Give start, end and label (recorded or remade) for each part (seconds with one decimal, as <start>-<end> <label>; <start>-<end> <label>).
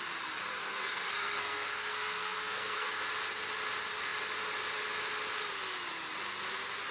0.0-0.5 recorded; 0.5-3.0 remade; 3.0-6.9 recorded